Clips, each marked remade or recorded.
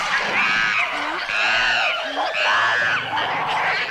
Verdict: recorded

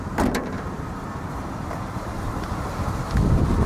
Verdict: remade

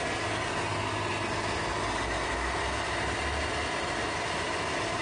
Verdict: recorded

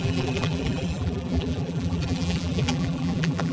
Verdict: remade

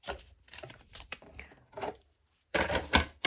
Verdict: remade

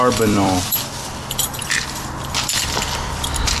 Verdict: remade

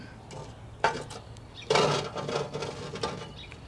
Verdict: recorded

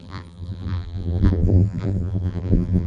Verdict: remade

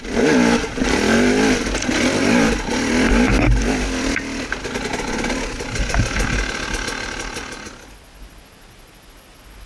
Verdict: recorded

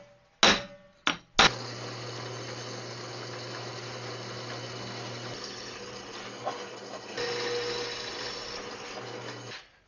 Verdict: recorded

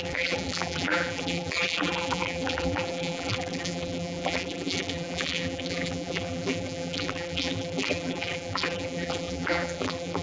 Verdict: remade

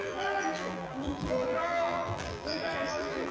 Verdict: remade